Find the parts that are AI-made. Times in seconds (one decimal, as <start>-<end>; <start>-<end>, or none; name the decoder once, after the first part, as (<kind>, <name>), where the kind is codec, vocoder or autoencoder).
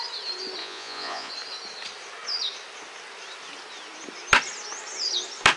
0.6-1.3 (vocoder, Vocos)